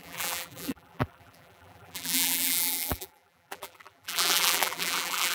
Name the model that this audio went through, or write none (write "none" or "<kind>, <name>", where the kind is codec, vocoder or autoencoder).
vocoder, BigVGAN v2